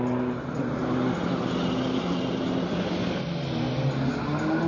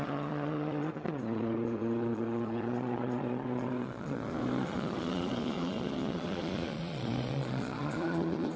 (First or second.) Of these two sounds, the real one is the first